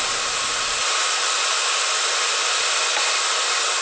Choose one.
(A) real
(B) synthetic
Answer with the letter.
A